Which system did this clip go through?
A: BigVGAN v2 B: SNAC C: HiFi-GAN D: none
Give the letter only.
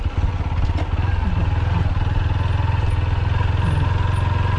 D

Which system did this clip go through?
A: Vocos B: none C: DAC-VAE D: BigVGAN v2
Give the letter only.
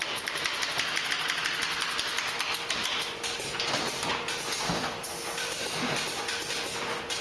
B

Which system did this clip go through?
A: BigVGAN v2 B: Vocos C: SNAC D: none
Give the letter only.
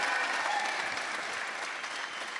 D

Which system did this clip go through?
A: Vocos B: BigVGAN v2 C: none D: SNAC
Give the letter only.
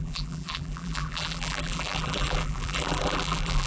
B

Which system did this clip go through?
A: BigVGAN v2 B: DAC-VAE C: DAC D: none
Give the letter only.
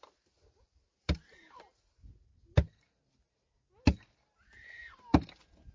D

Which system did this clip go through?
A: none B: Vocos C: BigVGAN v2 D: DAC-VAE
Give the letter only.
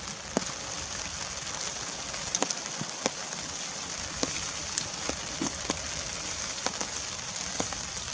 A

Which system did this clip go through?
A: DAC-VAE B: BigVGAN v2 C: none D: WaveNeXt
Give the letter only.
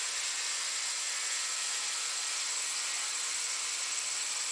C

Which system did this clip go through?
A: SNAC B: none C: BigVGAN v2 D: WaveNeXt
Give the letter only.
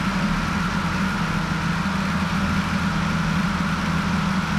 B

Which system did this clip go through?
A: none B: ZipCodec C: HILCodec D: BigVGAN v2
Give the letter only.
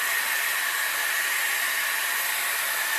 A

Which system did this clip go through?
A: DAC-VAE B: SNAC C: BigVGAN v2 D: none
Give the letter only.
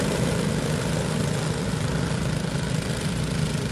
D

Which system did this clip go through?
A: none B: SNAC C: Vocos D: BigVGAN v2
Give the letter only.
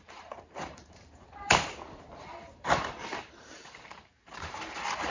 D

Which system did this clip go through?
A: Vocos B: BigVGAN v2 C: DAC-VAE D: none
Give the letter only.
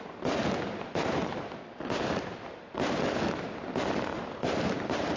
D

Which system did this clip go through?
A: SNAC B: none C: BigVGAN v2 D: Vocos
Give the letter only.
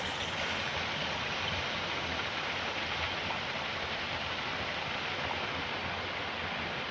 B